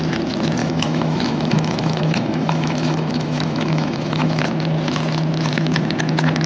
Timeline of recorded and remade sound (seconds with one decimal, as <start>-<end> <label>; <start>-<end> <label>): 0.0-0.6 recorded; 0.6-4.4 remade; 4.4-6.5 recorded